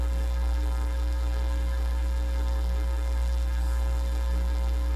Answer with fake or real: fake